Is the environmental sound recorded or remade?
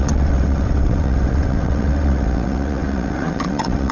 remade